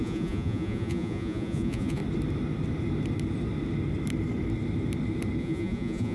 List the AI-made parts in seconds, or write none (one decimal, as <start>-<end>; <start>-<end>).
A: 0.0-2.0; 5.4-6.1